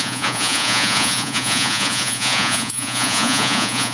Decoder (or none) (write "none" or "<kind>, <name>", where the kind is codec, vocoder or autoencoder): vocoder, Vocos